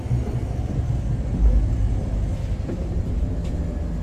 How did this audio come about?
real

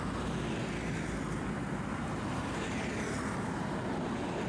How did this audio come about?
real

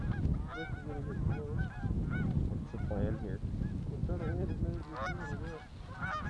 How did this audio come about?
real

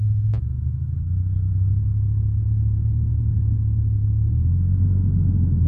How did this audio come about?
real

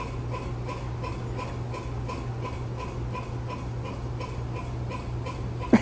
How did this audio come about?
real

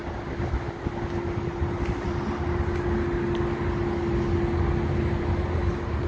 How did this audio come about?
real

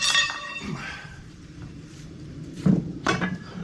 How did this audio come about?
fake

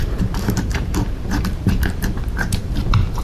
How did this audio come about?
fake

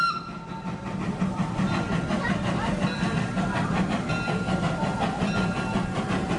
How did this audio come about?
real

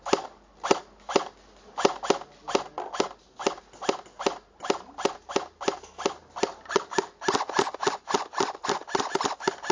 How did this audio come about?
real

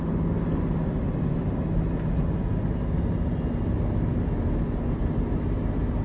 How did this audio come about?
real